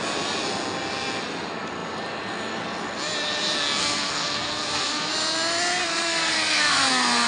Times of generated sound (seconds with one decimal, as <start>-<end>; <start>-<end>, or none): 3.8-5.1; 5.8-7.3